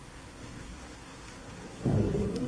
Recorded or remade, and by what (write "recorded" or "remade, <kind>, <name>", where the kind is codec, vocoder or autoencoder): remade, codec, SNAC